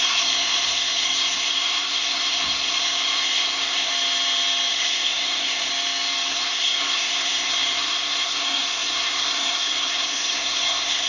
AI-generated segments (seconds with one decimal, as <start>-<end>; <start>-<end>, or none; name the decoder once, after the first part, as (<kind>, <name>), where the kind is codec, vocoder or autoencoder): 0.0-3.9 (codec, SNAC); 4.7-5.7; 6.3-11.1